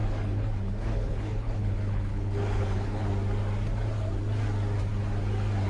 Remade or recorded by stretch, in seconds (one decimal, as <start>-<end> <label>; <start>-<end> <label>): 0.0-3.1 remade; 3.1-5.7 recorded